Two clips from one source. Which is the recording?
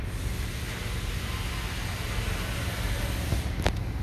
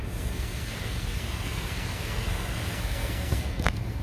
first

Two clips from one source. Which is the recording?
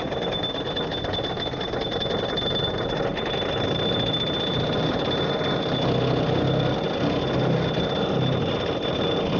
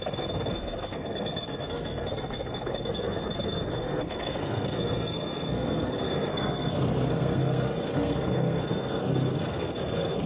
first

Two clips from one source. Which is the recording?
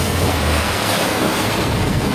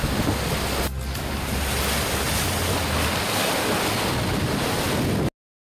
second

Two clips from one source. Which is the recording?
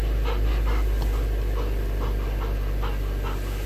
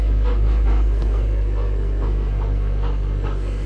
first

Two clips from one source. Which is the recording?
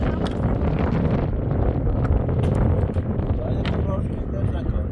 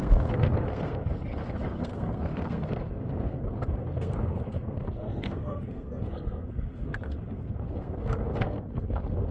first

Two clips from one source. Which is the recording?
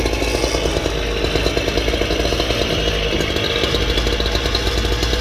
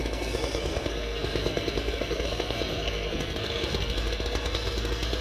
first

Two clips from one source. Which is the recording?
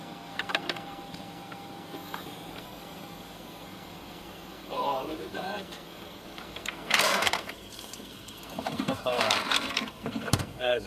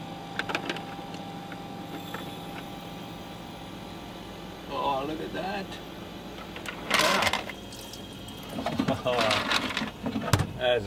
second